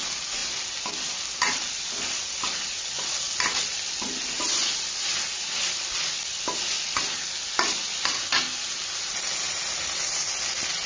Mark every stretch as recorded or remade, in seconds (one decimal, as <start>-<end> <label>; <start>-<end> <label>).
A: 0.0-10.9 recorded